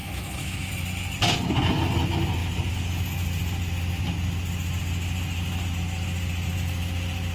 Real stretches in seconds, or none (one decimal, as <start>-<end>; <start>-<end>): 0.7-7.3

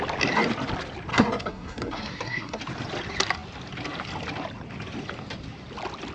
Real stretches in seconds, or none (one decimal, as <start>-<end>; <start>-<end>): 0.0-1.1; 2.6-6.1